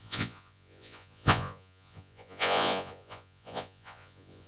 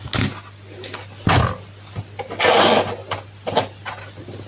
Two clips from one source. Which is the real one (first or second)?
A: second